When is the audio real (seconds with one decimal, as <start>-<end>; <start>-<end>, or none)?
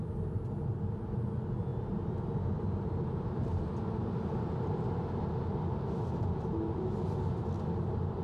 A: 0.0-1.7; 3.6-8.2